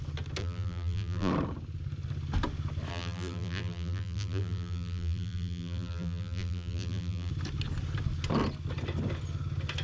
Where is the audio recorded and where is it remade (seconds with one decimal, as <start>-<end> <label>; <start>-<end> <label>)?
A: 0.0-0.4 recorded; 0.4-1.3 remade; 1.3-2.9 recorded; 2.9-7.3 remade; 7.3-9.8 recorded